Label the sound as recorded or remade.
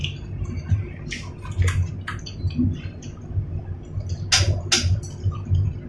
recorded